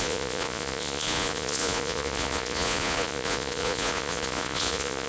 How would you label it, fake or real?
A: fake